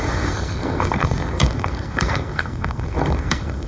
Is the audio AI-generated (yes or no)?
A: yes